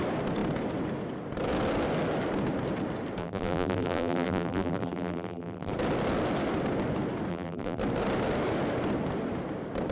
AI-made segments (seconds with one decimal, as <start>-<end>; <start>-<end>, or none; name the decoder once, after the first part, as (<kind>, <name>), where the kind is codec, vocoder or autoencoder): 3.2-5.7 (vocoder, BigVGAN v2); 7.3-7.8